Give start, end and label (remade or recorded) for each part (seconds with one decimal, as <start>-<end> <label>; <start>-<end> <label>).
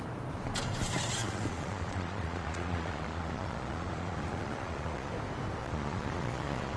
0.0-1.2 recorded; 1.2-5.1 remade; 5.1-5.6 recorded; 5.6-6.8 remade